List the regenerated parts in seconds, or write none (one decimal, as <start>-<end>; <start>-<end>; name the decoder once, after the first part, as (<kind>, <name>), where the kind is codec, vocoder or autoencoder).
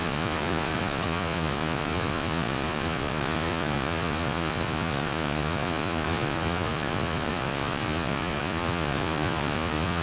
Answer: 0.0-10.0 (vocoder, Vocos)